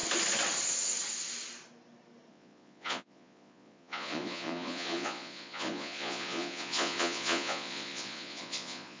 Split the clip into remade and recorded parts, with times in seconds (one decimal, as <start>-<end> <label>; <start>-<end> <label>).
0.0-2.3 recorded; 2.3-9.0 remade